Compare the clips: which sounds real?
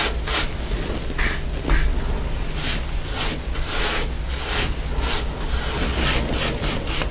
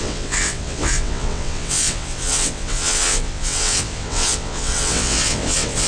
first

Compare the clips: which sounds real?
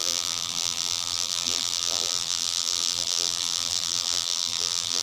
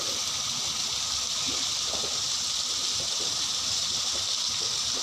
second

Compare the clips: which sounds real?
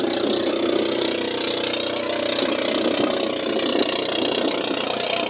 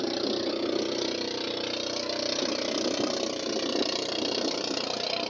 first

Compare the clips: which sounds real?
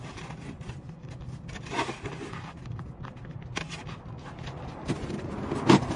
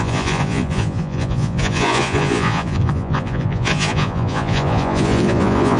first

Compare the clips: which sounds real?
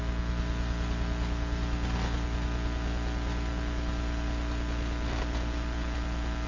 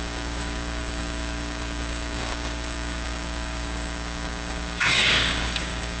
first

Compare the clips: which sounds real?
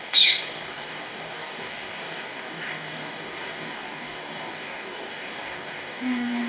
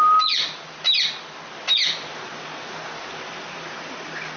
second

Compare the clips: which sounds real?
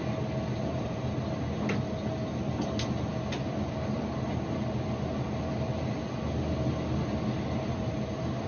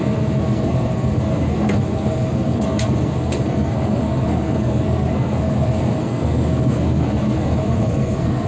first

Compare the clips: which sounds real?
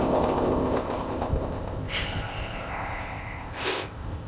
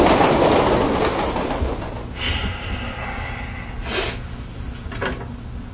second